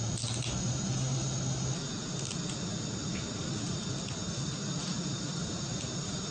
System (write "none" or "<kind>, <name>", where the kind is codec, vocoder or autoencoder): none